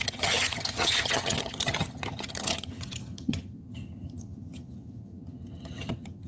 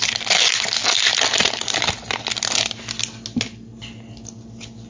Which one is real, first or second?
second